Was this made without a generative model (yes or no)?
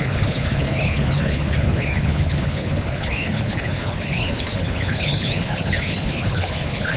no